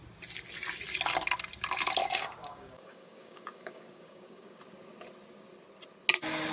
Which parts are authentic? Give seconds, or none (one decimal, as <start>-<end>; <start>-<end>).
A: 0.0-2.0; 4.6-6.5